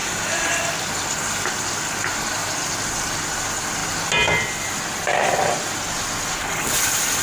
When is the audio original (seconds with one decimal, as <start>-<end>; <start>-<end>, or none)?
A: 0.0-7.2